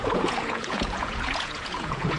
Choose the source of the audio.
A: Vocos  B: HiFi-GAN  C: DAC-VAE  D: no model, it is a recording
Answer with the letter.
A